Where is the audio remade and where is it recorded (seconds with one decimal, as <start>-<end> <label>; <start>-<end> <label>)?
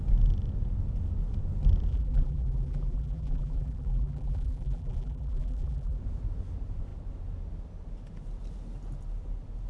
0.0-1.9 recorded; 1.9-6.0 remade; 6.0-9.7 recorded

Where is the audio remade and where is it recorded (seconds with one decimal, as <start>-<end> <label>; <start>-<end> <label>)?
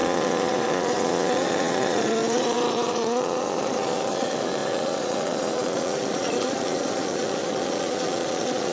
0.0-8.7 remade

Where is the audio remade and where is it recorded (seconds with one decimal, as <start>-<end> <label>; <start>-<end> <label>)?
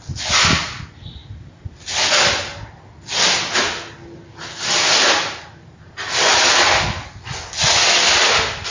0.0-8.7 recorded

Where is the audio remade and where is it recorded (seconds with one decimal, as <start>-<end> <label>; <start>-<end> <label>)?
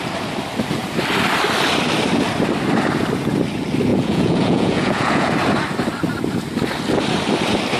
0.0-3.9 recorded; 3.9-5.3 remade; 5.3-7.8 recorded